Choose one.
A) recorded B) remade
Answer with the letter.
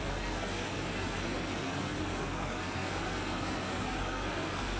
B